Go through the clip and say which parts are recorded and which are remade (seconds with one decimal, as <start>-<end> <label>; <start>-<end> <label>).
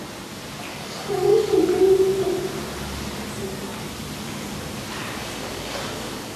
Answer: 0.0-0.7 recorded; 0.7-1.5 remade; 1.5-5.0 recorded; 5.0-6.4 remade